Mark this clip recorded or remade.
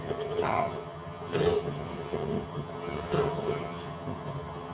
remade